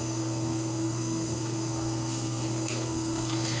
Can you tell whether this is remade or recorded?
remade